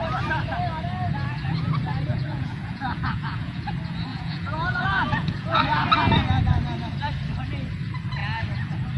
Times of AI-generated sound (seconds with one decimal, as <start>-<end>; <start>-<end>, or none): 2.1-3.6; 4.1-5.6